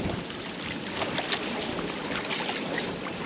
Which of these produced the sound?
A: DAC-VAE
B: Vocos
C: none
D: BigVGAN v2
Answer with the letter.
C